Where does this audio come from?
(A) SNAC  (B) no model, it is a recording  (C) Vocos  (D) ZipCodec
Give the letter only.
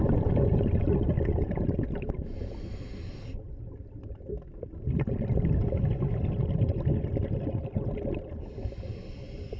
B